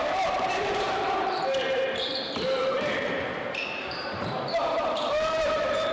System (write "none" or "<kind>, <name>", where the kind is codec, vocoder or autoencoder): vocoder, BigVGAN v2